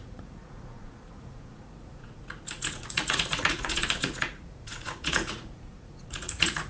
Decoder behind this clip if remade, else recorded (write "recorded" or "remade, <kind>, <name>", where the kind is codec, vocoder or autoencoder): remade, vocoder, Vocos